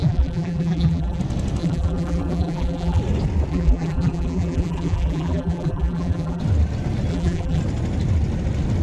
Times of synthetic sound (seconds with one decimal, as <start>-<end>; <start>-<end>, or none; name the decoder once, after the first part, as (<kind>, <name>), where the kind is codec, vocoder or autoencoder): 0.0-1.2 (vocoder, BigVGAN v2); 1.6-3.0; 3.5-6.4; 7.1-7.6